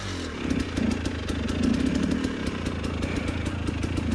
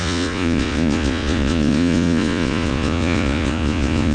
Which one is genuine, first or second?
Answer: first